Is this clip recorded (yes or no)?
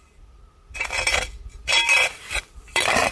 no